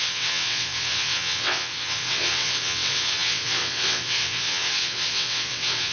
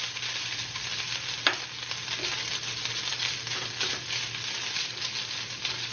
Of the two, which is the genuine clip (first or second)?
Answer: second